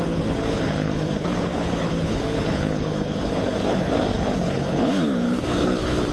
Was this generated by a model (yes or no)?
yes